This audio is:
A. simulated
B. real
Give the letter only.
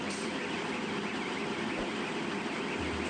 B